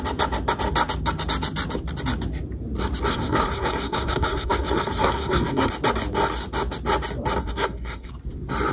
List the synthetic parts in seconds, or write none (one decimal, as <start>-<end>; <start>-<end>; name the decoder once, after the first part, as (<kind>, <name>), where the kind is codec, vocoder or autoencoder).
3.1-5.7 (codec, SNAC); 7.4-8.1